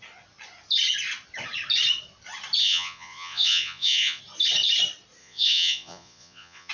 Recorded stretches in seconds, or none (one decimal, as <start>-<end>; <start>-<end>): 0.0-2.6; 4.2-5.2